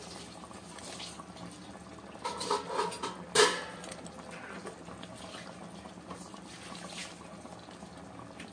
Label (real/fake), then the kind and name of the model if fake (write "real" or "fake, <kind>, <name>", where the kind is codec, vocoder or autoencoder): real